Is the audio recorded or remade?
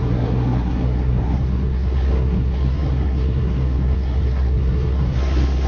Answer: remade